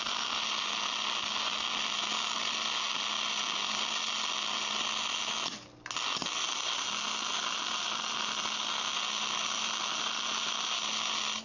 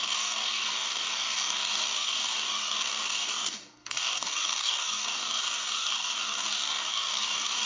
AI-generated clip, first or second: second